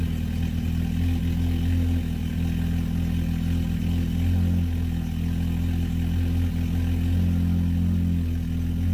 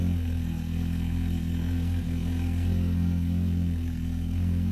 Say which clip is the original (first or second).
first